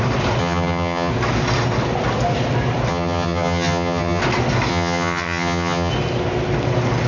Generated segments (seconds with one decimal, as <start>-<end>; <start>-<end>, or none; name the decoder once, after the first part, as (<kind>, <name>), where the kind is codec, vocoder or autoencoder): 0.4-1.1 (vocoder, HiFi-GAN); 2.9-4.2; 4.7-5.9